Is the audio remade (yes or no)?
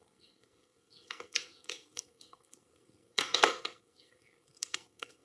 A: yes